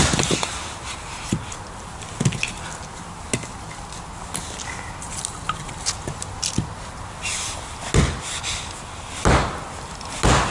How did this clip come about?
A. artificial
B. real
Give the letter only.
B